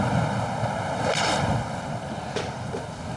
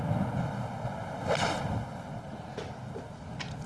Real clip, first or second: second